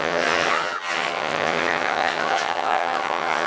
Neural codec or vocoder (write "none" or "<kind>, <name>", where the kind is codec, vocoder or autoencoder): vocoder, HiFi-GAN